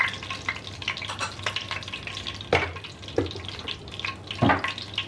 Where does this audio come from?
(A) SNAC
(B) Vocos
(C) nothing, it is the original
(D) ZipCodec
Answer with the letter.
C